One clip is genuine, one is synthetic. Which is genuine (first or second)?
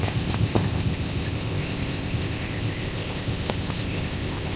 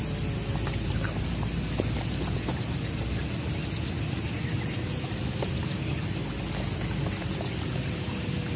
second